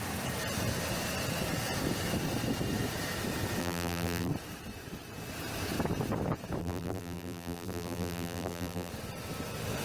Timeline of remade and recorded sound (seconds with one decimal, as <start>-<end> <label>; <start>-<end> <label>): 0.0-3.6 recorded; 3.6-4.3 remade; 4.3-6.6 recorded; 6.6-8.9 remade; 8.9-9.8 recorded